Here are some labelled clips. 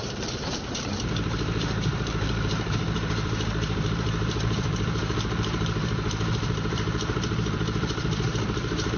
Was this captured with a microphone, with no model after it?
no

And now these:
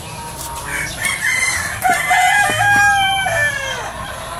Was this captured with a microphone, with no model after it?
yes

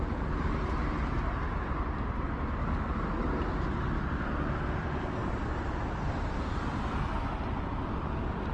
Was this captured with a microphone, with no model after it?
no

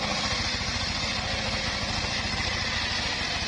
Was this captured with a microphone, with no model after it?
yes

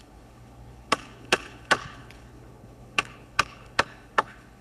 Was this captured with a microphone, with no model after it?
no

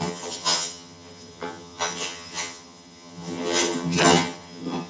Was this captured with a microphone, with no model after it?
no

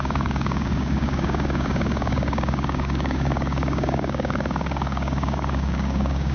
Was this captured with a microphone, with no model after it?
no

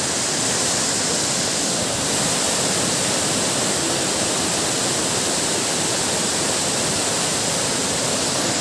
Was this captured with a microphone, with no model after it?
yes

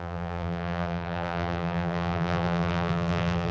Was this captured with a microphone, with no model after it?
no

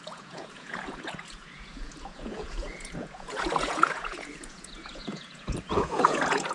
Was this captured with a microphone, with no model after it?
no